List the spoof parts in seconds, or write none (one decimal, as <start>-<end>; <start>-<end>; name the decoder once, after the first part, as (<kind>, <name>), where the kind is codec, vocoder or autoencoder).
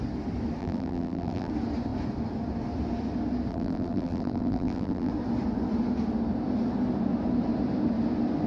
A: 0.6-1.5 (vocoder, BigVGAN v2); 3.5-5.1